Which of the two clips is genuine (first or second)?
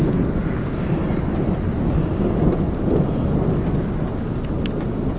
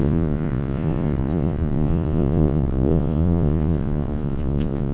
first